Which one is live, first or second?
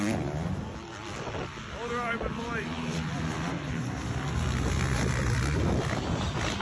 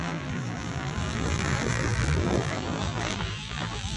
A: first